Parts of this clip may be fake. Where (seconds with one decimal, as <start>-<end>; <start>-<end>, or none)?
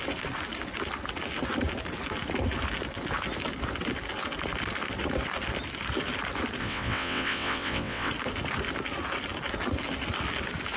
6.6-8.1